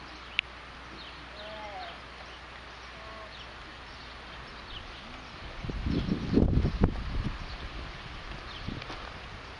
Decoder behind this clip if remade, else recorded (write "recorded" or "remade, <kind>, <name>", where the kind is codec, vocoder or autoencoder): recorded